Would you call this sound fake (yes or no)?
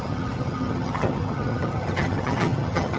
yes